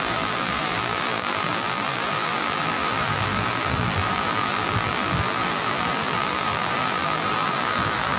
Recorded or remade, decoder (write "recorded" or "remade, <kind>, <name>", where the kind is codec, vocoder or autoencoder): remade, vocoder, BigVGAN v2